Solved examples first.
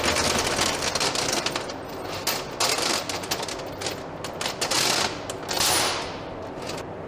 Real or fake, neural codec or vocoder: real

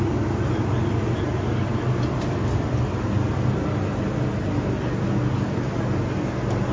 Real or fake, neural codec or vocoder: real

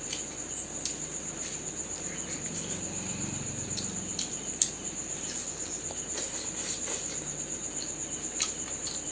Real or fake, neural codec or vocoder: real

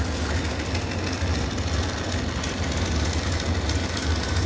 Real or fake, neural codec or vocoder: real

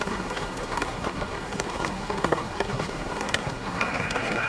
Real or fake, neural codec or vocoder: fake, codec, SNAC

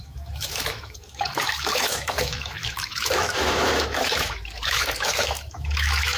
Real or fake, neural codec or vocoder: fake, autoencoder, DAC-VAE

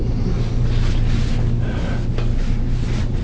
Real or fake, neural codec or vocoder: real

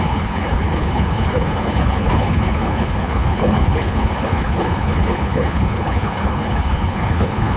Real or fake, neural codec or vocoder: fake, codec, HILCodec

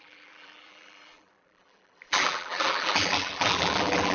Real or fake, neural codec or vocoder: fake, vocoder, BigVGAN v2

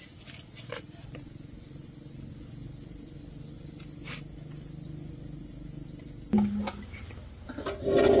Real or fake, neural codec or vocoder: real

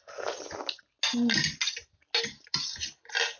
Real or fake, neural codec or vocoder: real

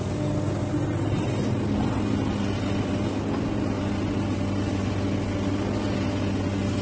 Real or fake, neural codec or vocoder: real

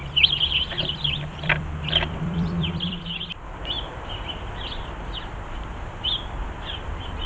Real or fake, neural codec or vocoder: fake, vocoder, BigVGAN v2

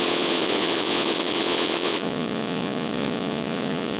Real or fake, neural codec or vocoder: fake, vocoder, Vocos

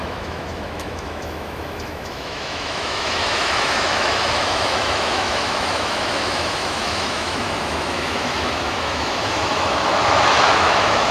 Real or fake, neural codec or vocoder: fake, autoencoder, DAC-VAE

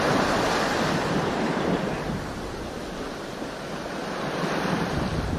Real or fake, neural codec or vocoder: fake, vocoder, BigVGAN v2